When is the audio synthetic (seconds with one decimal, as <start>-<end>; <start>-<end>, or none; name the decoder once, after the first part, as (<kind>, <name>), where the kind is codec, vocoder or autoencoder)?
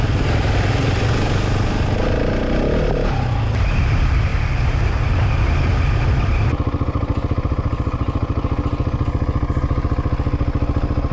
none